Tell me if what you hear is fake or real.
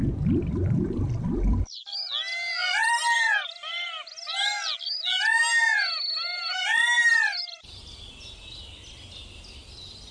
real